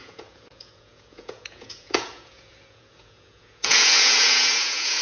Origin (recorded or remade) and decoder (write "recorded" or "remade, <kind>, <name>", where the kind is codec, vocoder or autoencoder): remade, vocoder, Vocos